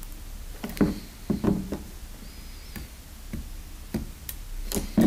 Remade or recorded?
recorded